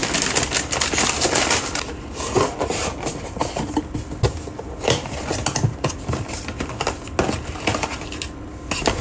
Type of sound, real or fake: real